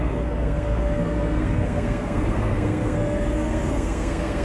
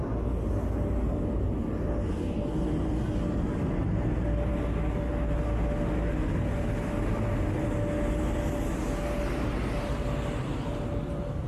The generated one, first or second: first